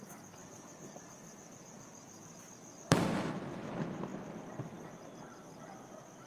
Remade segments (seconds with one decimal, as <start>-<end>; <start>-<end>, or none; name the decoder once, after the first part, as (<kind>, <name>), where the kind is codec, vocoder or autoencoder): 0.4-3.3 (vocoder, BigVGAN v2)